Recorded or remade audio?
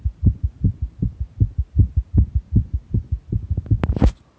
recorded